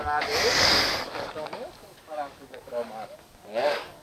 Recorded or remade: remade